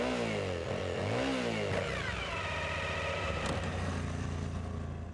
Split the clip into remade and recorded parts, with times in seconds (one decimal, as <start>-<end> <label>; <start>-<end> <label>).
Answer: 0.0-5.1 recorded